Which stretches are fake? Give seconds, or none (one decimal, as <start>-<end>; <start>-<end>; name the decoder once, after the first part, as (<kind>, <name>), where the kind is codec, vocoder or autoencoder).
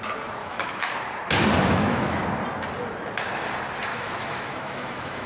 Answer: 0.4-0.9 (autoencoder, DAC-VAE); 1.6-2.2; 3.9-5.3